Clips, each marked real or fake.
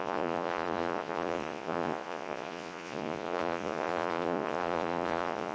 fake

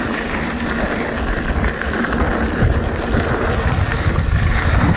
real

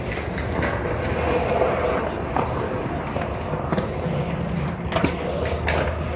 real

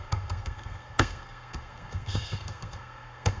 fake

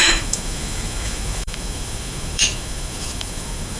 fake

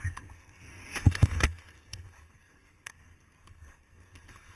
fake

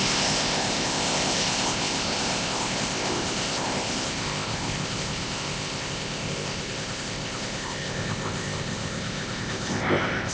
fake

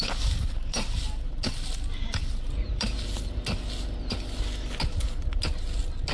real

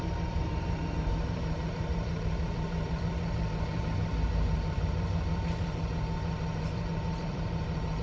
fake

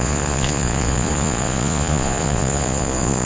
fake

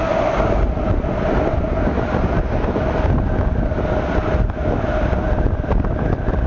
real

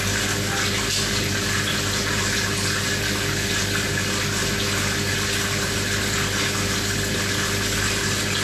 real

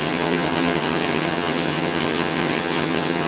fake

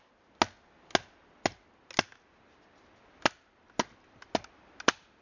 real